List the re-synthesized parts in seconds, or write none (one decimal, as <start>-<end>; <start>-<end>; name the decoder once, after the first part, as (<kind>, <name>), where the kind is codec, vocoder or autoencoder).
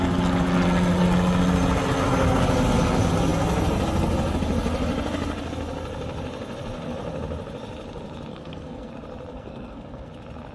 8.3-8.9 (codec, SNAC); 9.3-10.1